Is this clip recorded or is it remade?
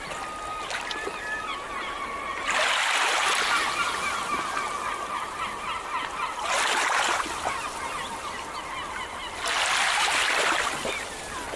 recorded